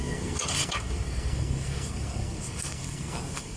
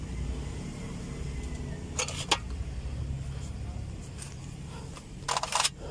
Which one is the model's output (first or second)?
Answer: first